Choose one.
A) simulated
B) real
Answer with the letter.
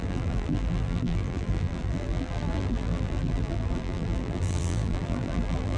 A